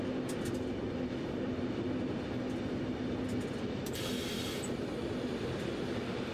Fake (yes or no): no